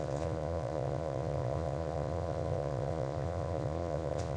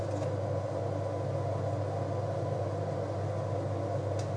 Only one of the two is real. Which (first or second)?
second